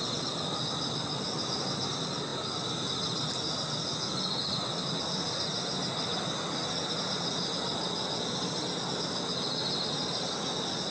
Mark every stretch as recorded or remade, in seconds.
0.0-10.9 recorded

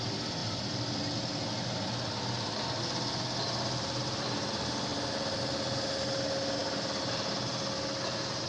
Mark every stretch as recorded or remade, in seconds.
0.0-8.5 recorded